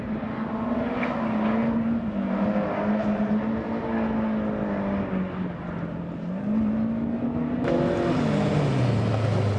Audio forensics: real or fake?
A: real